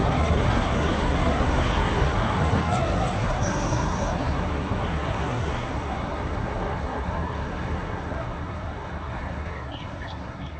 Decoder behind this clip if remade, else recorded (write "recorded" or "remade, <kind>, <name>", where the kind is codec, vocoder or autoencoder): remade, codec, SNAC